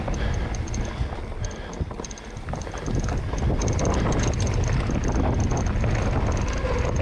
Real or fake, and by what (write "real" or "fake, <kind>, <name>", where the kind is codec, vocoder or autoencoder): real